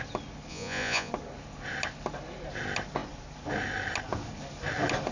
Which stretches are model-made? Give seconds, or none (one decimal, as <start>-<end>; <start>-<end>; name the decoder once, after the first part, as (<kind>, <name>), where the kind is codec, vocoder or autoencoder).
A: 0.5-1.1 (vocoder, Vocos)